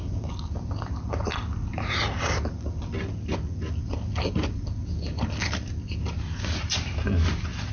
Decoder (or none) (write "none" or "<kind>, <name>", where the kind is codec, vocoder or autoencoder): none